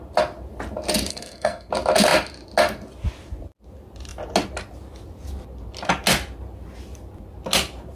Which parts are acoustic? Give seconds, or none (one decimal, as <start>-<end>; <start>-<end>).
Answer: 0.0-1.1; 1.7-8.0